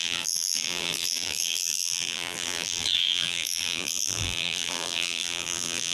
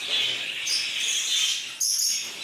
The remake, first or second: first